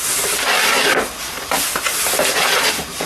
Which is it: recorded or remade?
recorded